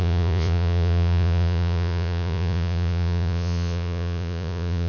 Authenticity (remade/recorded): remade